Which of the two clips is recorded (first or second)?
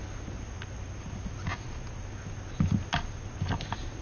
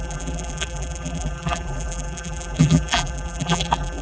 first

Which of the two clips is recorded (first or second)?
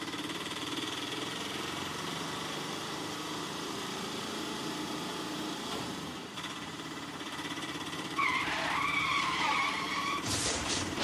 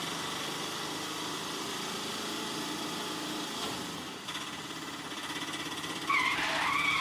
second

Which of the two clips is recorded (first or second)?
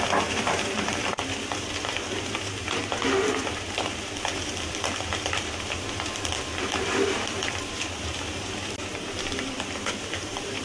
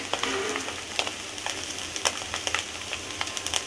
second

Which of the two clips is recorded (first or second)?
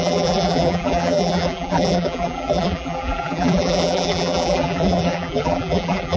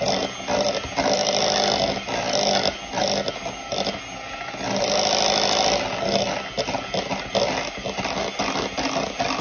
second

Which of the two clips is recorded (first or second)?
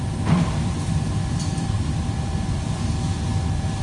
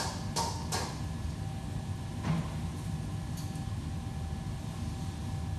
second